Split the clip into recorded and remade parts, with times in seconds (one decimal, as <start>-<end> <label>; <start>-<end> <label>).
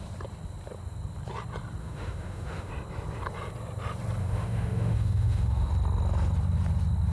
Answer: 0.0-1.8 recorded; 1.8-2.7 remade; 2.7-4.2 recorded; 4.2-5.7 remade; 5.7-7.1 recorded